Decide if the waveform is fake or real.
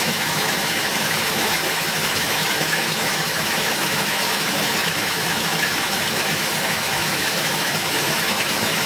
fake